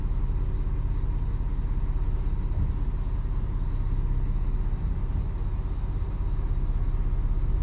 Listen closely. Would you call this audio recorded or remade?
recorded